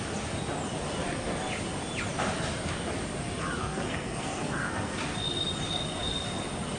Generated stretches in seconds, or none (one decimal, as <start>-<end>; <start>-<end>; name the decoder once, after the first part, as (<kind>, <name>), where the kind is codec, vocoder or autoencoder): 3.6-5.0 (codec, SNAC)